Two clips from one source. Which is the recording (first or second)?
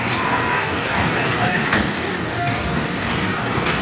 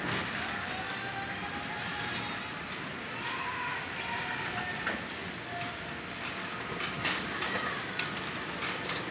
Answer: second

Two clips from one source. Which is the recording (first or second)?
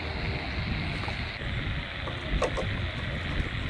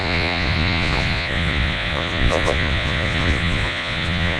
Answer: first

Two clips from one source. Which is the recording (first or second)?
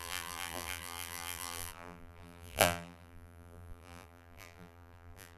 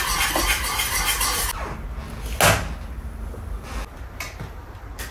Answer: second